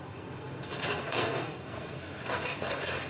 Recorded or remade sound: remade